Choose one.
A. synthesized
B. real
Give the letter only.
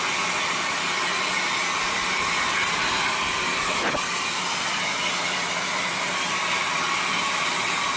A